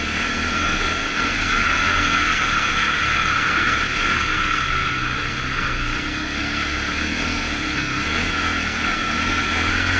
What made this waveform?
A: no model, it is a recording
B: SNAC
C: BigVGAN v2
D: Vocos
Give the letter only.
B